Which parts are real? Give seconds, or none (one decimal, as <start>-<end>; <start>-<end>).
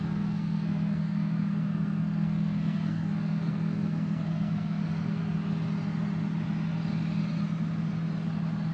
5.2-8.7